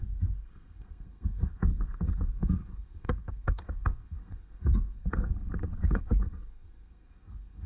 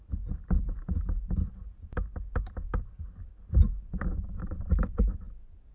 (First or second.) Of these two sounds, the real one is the second